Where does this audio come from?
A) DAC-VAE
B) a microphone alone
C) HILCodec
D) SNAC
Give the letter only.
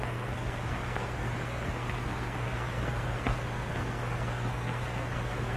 D